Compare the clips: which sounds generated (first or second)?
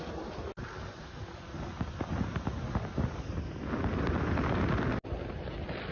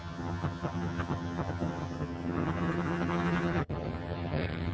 second